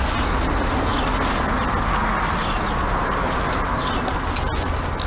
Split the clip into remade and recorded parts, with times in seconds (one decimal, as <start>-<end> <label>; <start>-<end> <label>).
0.0-5.1 recorded